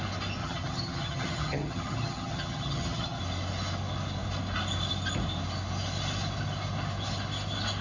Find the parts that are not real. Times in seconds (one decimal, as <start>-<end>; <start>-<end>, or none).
0.4-3.2